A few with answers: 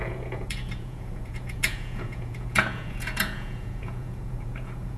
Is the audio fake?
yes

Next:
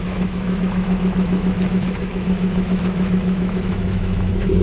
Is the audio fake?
yes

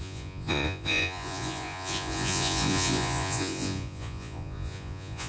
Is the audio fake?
yes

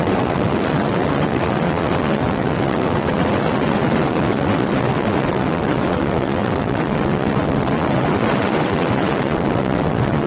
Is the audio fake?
yes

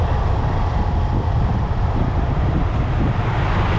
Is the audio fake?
yes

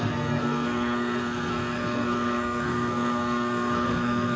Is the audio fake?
yes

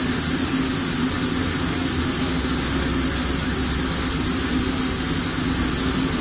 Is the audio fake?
no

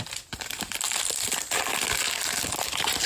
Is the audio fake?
no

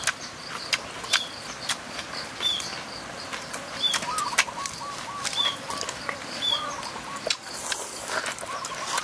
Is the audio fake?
no